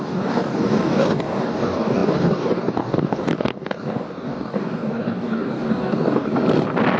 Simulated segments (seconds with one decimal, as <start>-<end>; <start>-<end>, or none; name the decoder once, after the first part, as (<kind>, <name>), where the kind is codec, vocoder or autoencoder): 0.0-6.3 (codec, DAC)